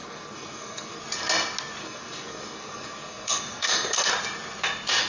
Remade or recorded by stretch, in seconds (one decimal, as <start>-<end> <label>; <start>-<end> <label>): 0.0-1.0 remade; 1.0-1.8 recorded; 1.8-4.1 remade; 4.1-5.1 recorded